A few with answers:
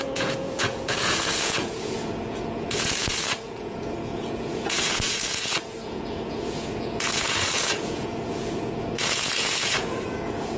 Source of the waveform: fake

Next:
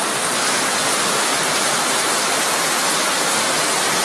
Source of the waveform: real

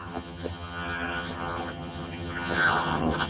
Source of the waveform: fake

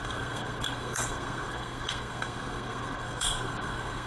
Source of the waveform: fake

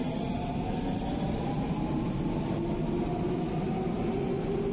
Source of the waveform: real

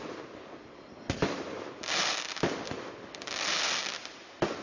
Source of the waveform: real